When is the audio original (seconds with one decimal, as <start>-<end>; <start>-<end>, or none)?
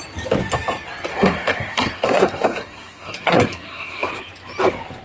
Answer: 0.0-1.1; 4.1-5.0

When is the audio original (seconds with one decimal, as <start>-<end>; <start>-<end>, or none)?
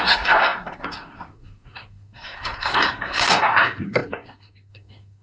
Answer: none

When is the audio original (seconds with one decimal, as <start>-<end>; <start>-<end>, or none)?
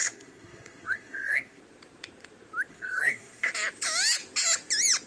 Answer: 1.6-2.7; 3.5-5.1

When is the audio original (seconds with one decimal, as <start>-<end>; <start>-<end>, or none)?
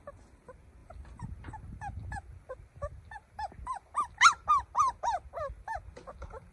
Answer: 0.0-6.5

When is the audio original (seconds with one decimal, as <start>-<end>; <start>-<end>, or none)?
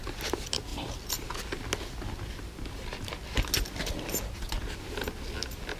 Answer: 0.0-5.8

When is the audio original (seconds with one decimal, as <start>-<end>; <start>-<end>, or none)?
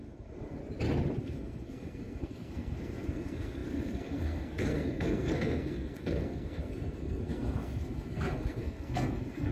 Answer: 0.6-1.2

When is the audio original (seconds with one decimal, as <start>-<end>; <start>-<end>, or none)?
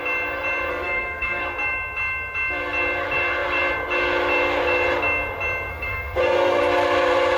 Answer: 0.0-0.7; 1.4-5.7; 6.6-7.4